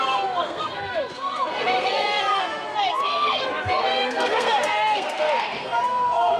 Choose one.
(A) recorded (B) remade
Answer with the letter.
B